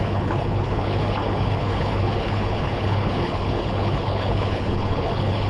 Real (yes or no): no